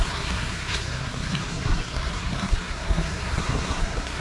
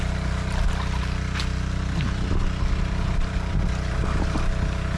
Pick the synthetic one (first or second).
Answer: first